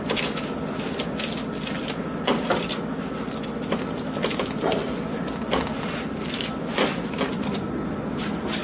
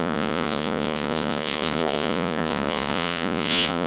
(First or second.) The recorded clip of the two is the first